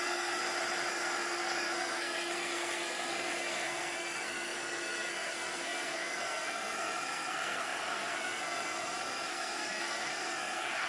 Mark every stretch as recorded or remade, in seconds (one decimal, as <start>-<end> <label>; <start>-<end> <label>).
0.0-0.4 remade; 0.4-0.9 recorded; 0.9-10.9 remade